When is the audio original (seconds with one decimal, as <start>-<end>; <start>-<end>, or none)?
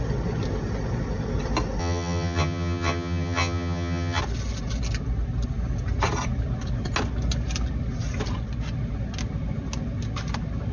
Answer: 0.0-1.8; 4.2-10.7